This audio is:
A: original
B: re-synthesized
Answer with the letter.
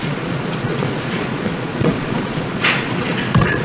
B